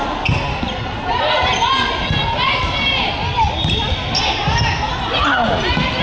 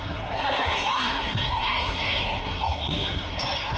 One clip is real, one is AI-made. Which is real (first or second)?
first